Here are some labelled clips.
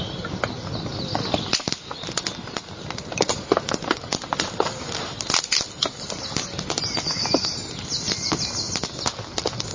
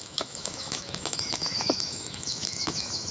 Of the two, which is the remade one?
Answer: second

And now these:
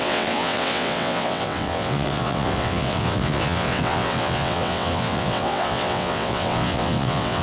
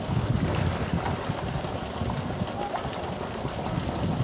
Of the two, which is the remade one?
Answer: first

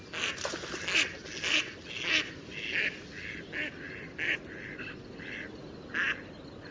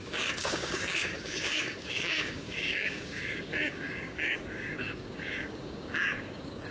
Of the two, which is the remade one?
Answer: second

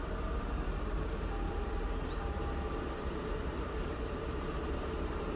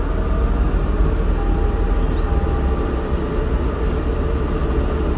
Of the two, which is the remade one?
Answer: first